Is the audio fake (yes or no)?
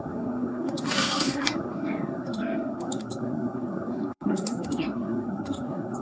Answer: yes